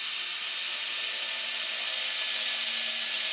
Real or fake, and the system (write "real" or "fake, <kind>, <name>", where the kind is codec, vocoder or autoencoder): real